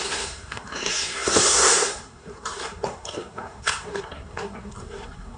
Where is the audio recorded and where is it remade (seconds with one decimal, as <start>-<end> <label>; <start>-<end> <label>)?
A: 0.0-5.4 remade